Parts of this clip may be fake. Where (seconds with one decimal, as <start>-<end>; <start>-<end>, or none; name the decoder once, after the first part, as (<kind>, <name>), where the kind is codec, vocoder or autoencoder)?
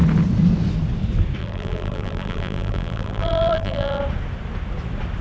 1.4-4.0 (vocoder, BigVGAN v2)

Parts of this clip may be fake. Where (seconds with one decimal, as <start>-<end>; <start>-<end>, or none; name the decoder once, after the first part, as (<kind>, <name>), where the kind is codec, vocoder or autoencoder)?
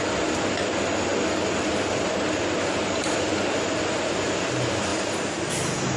4.9-5.5 (vocoder, BigVGAN v2)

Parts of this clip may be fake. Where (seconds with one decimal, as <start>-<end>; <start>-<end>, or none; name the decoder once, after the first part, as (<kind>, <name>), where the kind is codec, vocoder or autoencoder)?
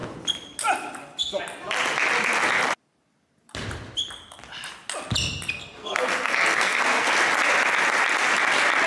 5.8-7.1 (codec, SNAC)